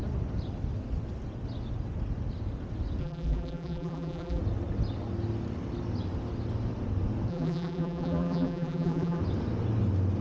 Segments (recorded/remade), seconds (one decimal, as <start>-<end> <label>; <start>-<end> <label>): 0.0-3.0 recorded; 3.0-4.4 remade; 4.4-7.3 recorded; 7.3-9.2 remade; 9.2-10.2 recorded